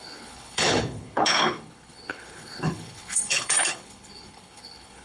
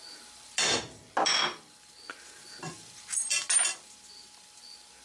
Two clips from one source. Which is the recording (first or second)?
second